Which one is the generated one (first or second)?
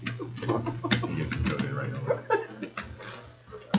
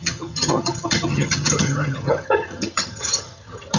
second